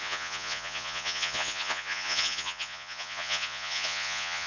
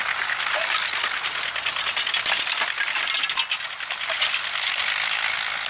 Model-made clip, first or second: first